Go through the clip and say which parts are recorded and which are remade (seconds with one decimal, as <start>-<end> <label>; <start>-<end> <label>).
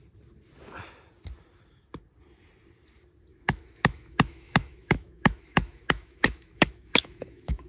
0.0-3.3 recorded; 3.3-7.7 remade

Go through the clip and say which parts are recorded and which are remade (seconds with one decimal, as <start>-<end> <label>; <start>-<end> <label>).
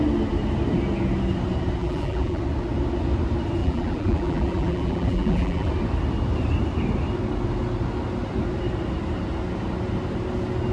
0.0-1.8 recorded; 1.8-2.4 remade; 2.4-3.6 recorded; 3.6-5.7 remade; 5.7-10.7 recorded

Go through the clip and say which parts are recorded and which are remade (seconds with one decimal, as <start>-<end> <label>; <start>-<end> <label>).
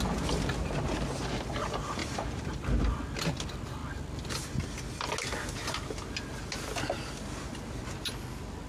0.0-2.0 recorded; 2.0-2.9 remade; 2.9-8.7 recorded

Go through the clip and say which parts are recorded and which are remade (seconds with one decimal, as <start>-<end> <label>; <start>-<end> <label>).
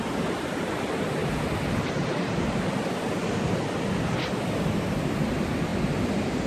0.0-6.5 recorded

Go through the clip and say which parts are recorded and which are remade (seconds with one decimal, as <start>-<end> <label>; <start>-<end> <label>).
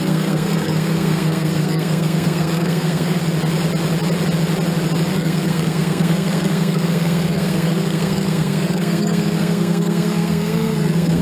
0.0-3.2 remade; 3.2-5.1 recorded; 5.1-11.2 remade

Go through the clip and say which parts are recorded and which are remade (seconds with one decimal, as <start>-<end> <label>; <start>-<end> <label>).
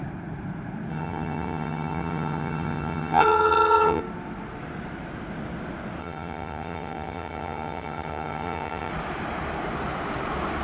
0.0-0.9 recorded; 0.9-4.0 remade; 4.0-6.0 recorded; 6.0-8.9 remade; 8.9-10.6 recorded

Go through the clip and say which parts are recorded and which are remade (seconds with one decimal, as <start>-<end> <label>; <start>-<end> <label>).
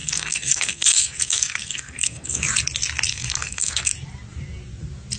0.0-2.4 remade; 2.4-3.1 recorded; 3.1-3.9 remade; 3.9-5.2 recorded